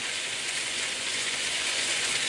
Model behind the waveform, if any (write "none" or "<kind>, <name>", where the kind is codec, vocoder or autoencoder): vocoder, Vocos